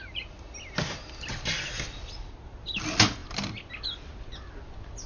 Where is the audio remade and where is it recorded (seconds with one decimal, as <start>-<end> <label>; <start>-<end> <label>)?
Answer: 0.0-5.1 recorded